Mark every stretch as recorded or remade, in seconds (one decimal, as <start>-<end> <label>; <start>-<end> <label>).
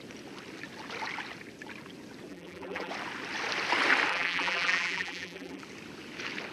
0.0-2.3 recorded; 2.3-2.9 remade; 2.9-4.1 recorded; 4.1-5.6 remade; 5.6-6.5 recorded